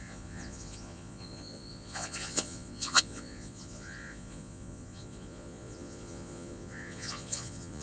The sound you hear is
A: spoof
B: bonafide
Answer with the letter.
A